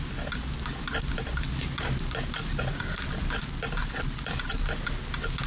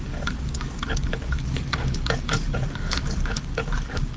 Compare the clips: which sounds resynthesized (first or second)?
second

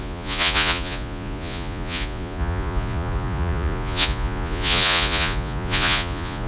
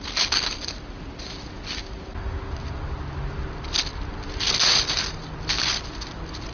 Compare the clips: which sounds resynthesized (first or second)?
first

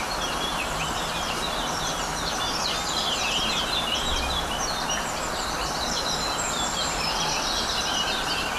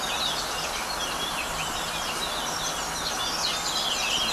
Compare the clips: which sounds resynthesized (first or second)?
first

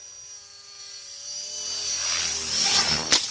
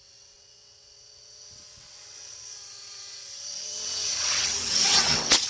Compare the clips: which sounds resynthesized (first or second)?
second